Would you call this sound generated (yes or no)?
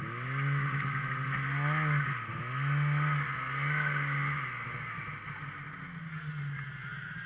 no